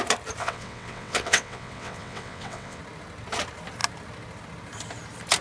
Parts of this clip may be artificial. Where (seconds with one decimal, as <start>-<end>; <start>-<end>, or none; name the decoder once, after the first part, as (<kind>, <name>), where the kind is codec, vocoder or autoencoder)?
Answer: 0.4-2.8 (vocoder, WaveNeXt)